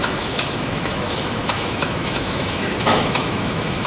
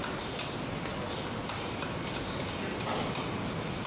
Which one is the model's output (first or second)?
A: first